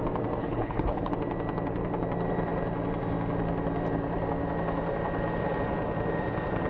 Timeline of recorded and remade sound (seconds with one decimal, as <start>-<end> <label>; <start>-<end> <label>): 0.0-0.4 recorded; 0.4-1.1 remade; 1.1-6.7 recorded